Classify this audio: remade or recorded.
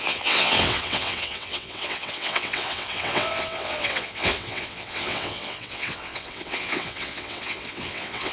remade